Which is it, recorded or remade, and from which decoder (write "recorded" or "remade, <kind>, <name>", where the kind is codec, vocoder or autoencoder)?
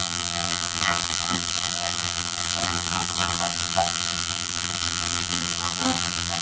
remade, vocoder, BigVGAN v2